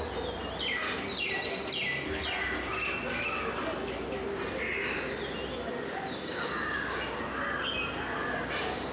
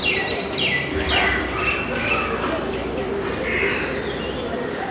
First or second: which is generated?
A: second